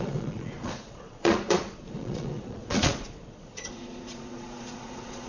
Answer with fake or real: fake